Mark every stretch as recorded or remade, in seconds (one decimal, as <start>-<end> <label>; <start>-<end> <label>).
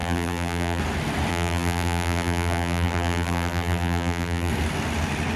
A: 0.0-0.8 remade; 0.8-1.3 recorded; 1.3-4.5 remade; 4.5-5.4 recorded